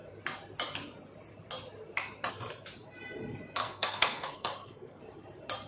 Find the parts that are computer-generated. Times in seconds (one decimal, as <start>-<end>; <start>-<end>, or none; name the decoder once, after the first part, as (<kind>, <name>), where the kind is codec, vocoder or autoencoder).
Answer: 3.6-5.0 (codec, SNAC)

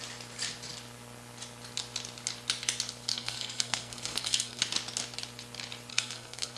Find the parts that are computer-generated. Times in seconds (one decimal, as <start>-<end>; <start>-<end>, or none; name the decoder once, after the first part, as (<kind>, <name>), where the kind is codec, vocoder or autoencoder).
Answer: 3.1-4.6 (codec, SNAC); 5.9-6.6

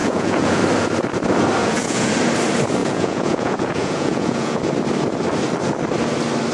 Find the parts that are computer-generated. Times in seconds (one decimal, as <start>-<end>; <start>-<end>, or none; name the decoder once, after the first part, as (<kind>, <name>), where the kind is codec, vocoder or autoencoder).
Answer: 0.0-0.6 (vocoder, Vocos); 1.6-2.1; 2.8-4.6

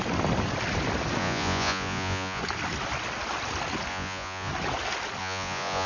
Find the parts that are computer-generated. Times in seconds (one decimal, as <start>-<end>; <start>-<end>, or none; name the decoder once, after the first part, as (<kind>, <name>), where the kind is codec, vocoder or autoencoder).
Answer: 1.2-2.4 (vocoder, Vocos); 3.9-4.5; 5.2-5.9

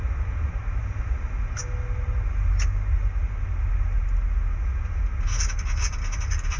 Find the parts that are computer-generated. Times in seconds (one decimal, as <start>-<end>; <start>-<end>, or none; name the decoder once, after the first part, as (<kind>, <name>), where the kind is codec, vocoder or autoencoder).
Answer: none

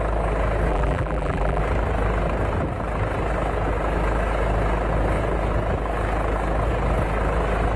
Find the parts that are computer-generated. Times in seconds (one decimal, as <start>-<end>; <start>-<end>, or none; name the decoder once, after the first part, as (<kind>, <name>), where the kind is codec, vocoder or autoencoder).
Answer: 0.7-1.6 (vocoder, BigVGAN v2)

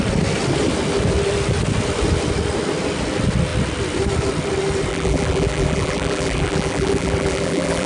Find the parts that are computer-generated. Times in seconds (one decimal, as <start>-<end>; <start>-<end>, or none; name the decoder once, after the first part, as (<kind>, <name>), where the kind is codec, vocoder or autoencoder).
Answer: 4.9-7.9 (vocoder, BigVGAN v2)

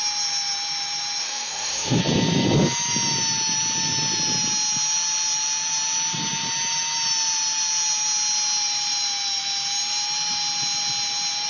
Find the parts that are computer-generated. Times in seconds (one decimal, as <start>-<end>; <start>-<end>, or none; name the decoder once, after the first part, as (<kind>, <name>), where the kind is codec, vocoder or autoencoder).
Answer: 1.2-2.0 (autoencoder, DAC-VAE)